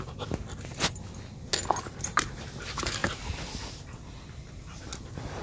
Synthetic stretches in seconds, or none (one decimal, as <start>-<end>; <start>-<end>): none